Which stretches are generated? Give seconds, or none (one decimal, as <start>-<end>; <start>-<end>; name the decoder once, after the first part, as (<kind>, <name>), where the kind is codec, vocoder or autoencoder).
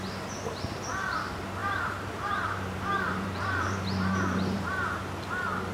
1.6-5.0 (vocoder, BigVGAN v2)